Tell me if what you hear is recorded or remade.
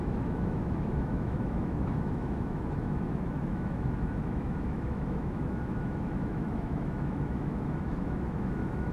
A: remade